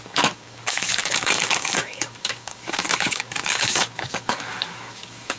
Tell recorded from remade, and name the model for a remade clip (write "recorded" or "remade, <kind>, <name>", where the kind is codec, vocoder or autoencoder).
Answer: remade, codec, DAC